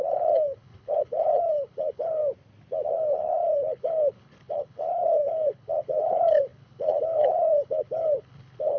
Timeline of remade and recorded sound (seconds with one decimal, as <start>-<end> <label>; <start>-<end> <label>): 0.0-2.2 remade; 2.2-2.9 recorded; 2.9-8.8 remade